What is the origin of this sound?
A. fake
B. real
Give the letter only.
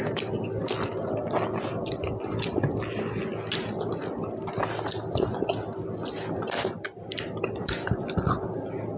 B